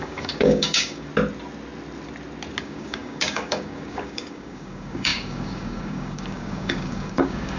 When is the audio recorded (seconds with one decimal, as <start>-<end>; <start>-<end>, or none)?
1.1-2.6